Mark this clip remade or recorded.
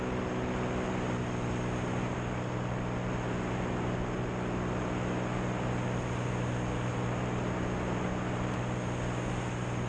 recorded